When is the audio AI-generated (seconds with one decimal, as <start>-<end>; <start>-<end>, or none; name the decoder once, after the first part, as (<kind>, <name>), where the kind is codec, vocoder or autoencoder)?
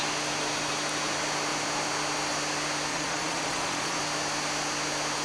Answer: 2.9-4.0 (vocoder, Vocos)